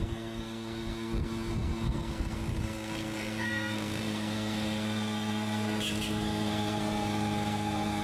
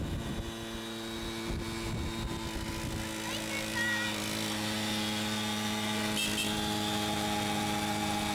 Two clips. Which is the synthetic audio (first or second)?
first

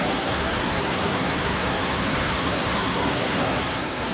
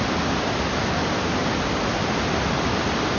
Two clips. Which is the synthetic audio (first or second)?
first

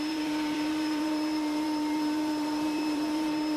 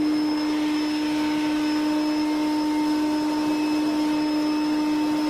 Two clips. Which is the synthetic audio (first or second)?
first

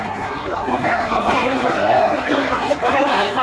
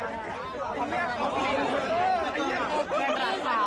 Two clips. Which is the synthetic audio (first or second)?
first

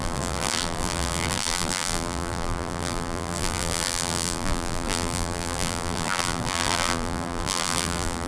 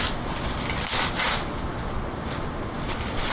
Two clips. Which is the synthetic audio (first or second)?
first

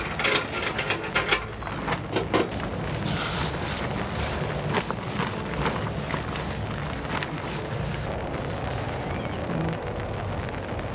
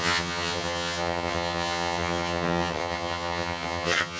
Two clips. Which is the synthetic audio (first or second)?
second